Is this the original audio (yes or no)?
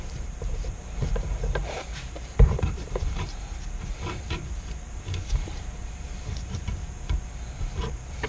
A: no